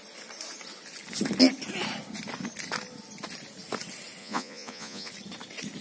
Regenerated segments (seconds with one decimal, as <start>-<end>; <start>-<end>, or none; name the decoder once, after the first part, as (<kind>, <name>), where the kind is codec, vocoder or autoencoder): 4.2-5.1 (vocoder, Vocos)